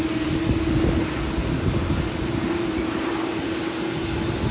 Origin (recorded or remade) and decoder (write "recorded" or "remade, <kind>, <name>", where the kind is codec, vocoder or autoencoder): recorded